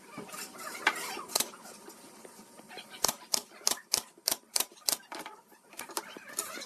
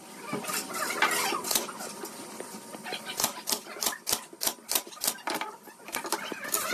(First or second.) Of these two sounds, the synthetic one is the first